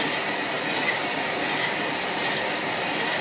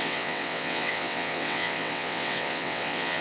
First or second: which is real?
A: first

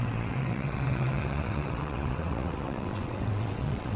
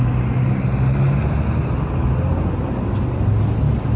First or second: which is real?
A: second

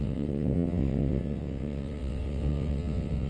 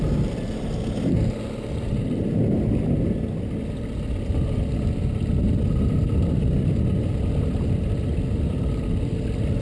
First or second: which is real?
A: second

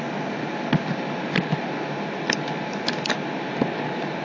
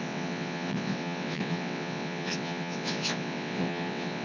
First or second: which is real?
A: first